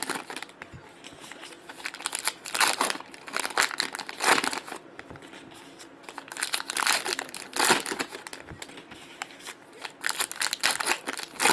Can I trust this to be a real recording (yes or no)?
yes